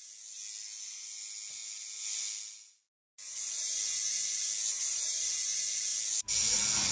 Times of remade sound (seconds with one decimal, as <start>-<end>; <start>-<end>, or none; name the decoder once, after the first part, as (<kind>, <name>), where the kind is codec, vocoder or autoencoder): 4.7-5.4 (vocoder, BigVGAN v2)